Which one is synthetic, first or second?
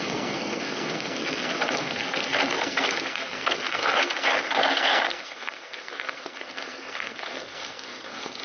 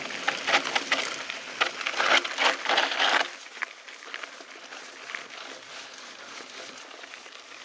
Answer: first